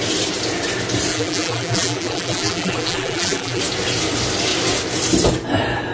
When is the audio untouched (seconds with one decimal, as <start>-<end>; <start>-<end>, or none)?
0.0-1.1; 3.6-5.9